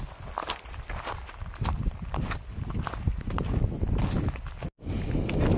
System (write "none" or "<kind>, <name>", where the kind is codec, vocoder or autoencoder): none